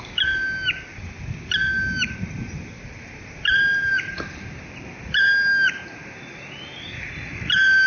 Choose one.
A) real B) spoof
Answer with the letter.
A